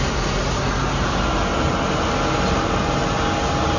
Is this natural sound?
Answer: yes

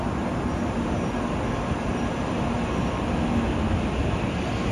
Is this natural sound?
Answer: yes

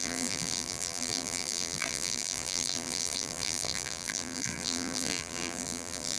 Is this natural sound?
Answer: no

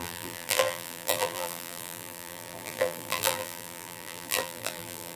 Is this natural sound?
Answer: no